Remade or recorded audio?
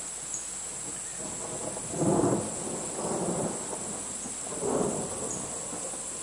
recorded